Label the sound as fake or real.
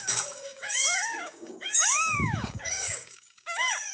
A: fake